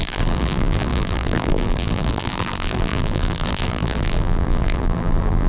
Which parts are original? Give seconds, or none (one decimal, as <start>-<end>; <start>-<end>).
none

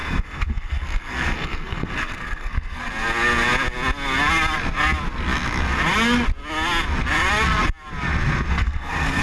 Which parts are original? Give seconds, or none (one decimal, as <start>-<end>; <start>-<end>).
2.9-8.5

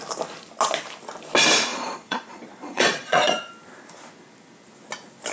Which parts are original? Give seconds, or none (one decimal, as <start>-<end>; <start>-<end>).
0.0-1.7; 3.5-5.3

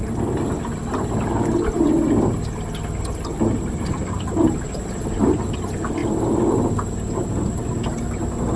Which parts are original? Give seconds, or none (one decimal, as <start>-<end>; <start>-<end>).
0.0-8.6

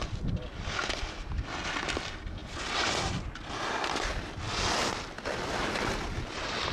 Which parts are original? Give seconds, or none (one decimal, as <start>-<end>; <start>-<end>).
0.0-6.7